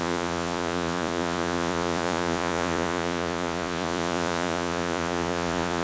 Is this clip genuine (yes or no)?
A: no